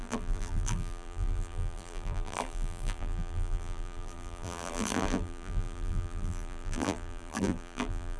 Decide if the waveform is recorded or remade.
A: remade